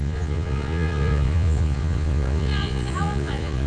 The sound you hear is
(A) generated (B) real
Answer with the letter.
A